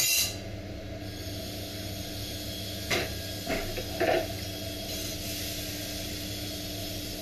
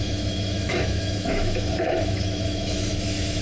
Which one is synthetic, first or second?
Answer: second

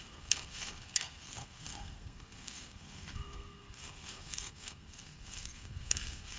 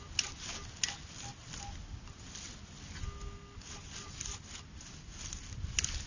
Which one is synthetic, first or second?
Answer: first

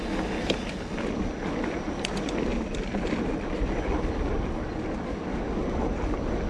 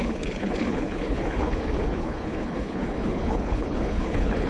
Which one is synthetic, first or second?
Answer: second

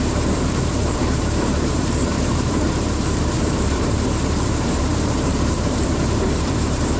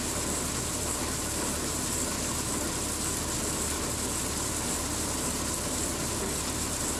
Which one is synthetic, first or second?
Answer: first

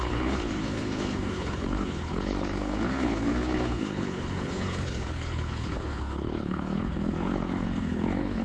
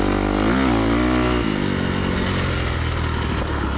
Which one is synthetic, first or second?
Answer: first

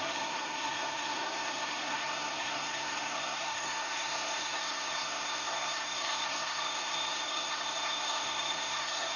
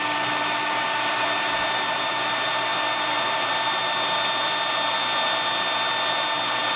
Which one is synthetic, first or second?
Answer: first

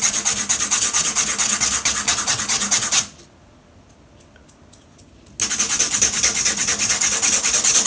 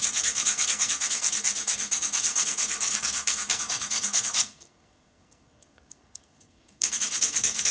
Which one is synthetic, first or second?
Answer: second